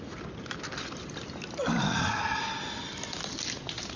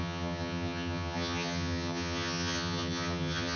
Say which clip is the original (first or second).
first